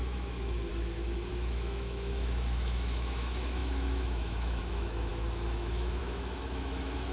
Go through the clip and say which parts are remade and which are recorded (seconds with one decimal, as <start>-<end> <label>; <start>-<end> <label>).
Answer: 0.0-0.7 remade; 0.7-1.3 recorded; 1.3-7.1 remade